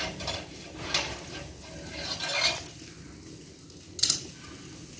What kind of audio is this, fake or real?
real